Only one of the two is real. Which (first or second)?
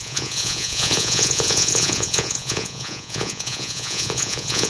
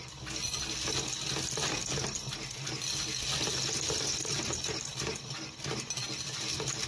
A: second